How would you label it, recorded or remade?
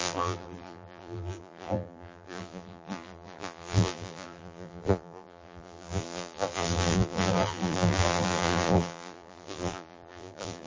remade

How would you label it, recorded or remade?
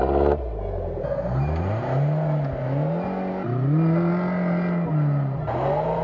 recorded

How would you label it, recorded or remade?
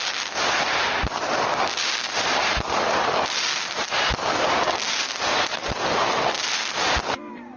recorded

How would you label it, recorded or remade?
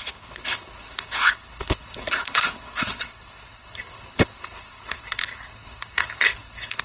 remade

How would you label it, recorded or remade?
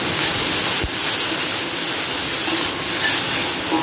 recorded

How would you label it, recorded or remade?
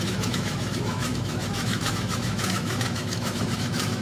remade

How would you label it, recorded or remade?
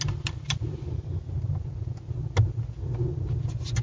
recorded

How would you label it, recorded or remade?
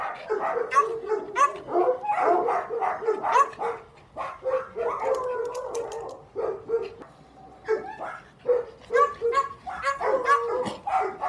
recorded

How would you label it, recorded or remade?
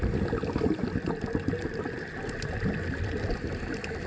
recorded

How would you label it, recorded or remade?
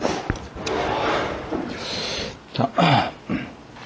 recorded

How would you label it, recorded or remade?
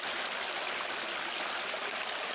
recorded